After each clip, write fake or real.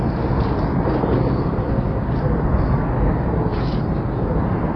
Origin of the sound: real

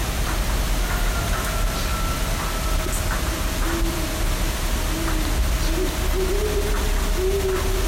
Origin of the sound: real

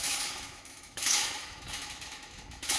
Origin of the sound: fake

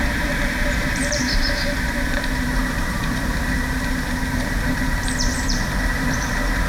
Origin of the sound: fake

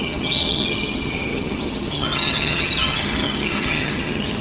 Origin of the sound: fake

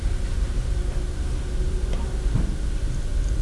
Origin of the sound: real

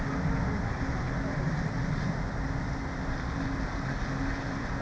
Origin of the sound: real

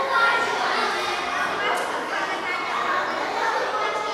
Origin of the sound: real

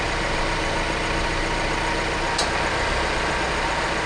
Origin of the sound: real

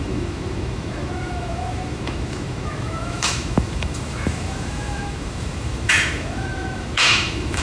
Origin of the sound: fake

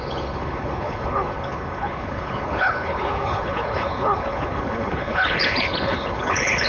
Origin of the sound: fake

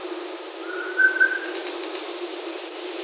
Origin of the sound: real